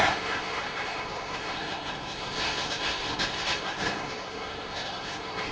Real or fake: fake